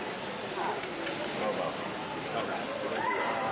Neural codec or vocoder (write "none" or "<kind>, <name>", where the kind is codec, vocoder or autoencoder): none